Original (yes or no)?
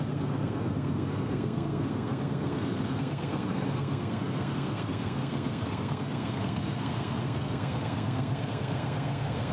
no